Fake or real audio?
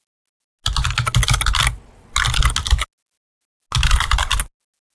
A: real